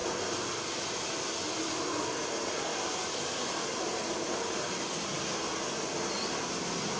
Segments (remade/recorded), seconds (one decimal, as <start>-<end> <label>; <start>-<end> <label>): 0.0-7.0 recorded